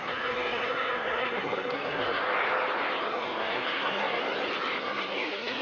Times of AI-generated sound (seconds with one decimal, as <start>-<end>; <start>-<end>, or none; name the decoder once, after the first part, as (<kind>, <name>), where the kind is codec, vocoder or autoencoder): 0.0-2.2 (codec, SNAC); 3.0-4.2; 4.8-5.6